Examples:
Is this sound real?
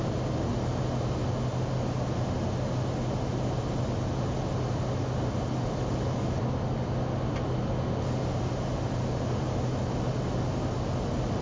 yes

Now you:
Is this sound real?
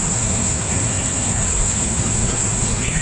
no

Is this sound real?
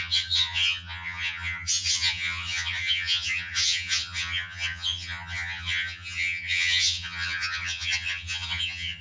no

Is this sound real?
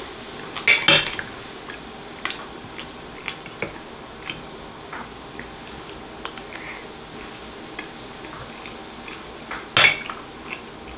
yes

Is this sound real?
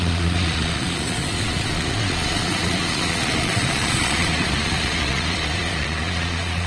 no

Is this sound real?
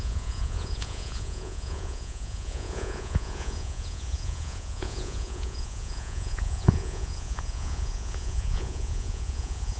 no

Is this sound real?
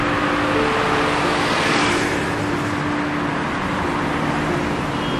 yes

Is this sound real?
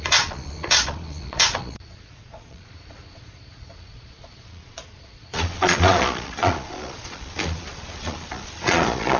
no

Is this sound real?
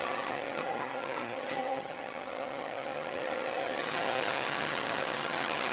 no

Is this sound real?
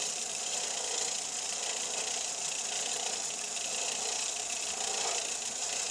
yes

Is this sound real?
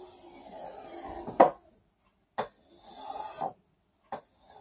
yes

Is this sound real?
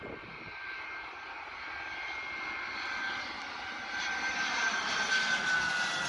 yes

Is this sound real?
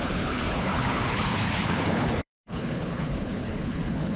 no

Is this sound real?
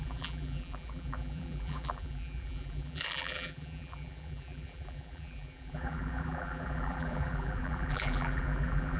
no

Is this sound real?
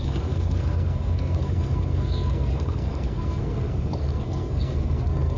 no